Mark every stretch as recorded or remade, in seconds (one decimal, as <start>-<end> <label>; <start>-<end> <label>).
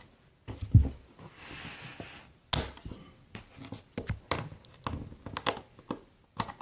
0.0-6.6 recorded